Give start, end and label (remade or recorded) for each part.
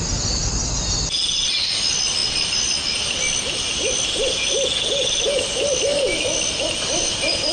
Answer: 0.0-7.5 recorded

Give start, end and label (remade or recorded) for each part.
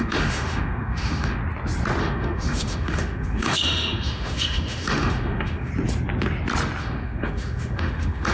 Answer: 0.0-1.4 remade; 1.4-2.0 recorded; 2.0-5.7 remade; 5.7-6.8 recorded; 6.8-8.3 remade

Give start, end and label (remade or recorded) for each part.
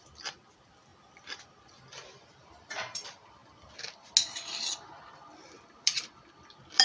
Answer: 0.0-0.9 remade; 0.9-2.1 recorded; 2.1-3.4 remade; 3.4-5.5 recorded; 5.5-6.8 remade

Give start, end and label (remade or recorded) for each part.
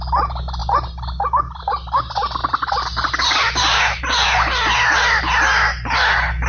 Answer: 0.0-6.5 recorded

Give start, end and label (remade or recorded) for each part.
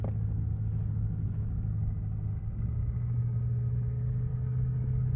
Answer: 0.0-4.3 recorded; 4.3-5.2 remade